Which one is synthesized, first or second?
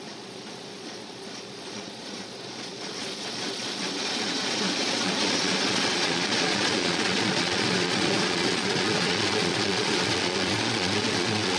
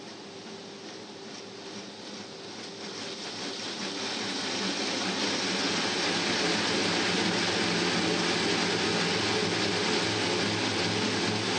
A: first